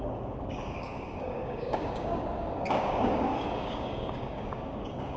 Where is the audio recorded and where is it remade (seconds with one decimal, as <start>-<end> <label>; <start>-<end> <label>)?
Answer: 0.0-5.2 remade